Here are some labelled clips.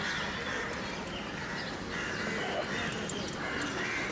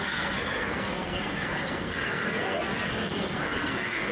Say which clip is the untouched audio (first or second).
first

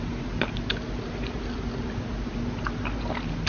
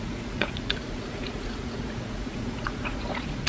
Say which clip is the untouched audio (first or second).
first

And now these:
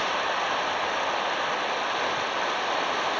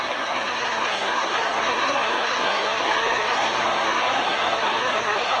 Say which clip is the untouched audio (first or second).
first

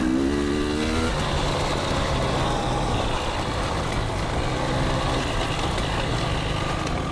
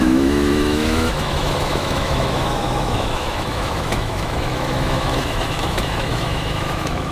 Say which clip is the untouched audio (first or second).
first